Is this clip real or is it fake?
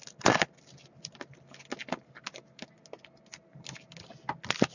real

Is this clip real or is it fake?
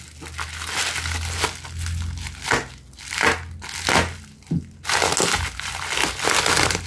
real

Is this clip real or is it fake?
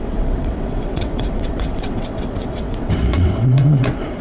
fake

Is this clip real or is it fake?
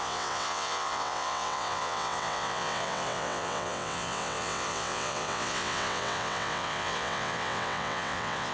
fake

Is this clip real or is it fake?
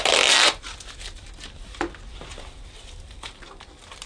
real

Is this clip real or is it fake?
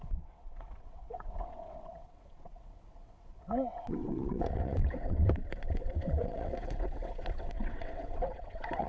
fake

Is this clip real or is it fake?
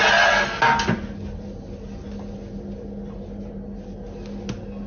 real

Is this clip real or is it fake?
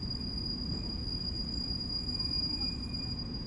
real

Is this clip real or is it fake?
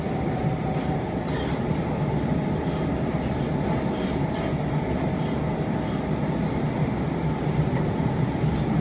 real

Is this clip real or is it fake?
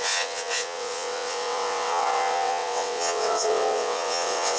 fake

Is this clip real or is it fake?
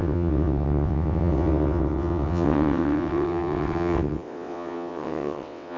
fake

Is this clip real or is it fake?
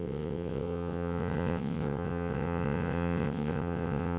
fake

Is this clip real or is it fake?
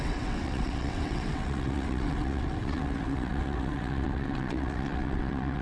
fake